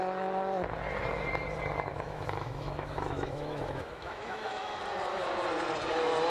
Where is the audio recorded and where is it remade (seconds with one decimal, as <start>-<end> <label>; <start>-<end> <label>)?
0.0-1.9 recorded; 1.9-4.8 remade; 4.8-6.3 recorded